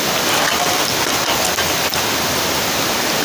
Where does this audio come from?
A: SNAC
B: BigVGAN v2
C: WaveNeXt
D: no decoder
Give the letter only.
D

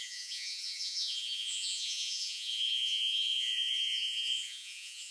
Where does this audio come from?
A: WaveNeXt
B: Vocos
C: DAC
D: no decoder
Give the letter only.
B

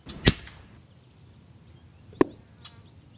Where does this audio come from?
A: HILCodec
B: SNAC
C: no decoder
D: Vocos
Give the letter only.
C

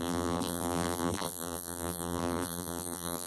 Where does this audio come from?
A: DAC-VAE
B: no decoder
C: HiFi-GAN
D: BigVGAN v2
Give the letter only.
D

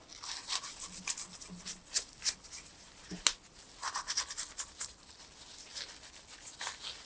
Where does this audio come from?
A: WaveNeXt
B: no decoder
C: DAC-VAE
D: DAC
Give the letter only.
B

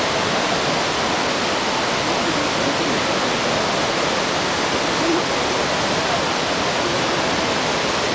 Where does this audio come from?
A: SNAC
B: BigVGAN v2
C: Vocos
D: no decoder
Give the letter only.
D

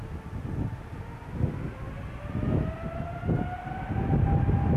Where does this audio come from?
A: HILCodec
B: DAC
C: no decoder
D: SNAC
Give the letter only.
C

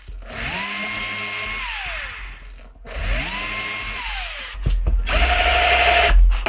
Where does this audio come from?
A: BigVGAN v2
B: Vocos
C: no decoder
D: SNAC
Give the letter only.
C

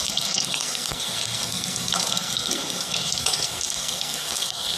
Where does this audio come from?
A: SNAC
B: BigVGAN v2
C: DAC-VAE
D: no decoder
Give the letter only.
A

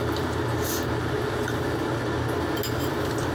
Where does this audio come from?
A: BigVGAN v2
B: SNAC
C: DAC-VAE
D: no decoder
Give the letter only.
D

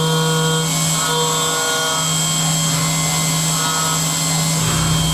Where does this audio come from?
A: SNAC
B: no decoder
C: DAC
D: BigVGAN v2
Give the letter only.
B